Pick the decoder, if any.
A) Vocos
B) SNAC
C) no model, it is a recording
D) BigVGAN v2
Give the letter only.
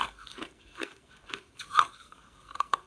B